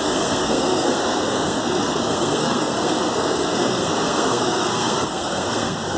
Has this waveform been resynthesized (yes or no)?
yes